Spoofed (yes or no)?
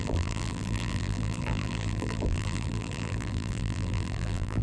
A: yes